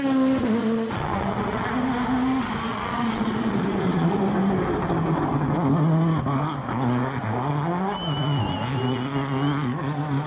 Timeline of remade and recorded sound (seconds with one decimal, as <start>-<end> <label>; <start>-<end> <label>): 0.0-0.6 recorded; 0.6-1.7 remade; 1.7-2.7 recorded; 2.7-4.2 remade; 4.2-10.3 recorded